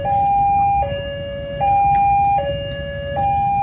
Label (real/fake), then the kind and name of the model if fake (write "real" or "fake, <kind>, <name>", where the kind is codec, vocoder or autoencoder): real